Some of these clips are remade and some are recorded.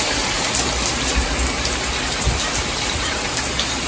recorded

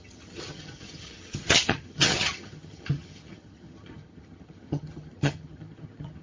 remade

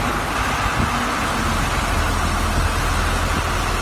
recorded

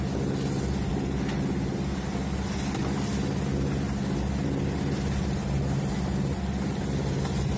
recorded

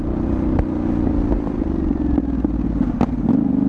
recorded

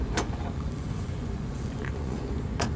remade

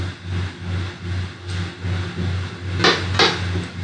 recorded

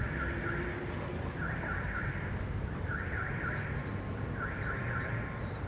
recorded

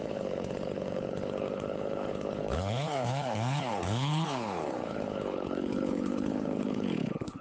remade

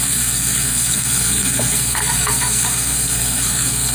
remade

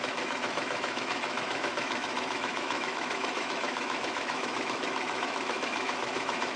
remade